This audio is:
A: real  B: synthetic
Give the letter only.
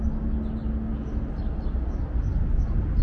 A